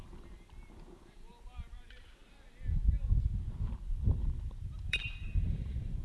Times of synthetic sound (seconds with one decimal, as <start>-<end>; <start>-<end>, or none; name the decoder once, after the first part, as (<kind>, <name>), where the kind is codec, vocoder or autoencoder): 0.0-2.2 (vocoder, BigVGAN v2); 3.8-6.0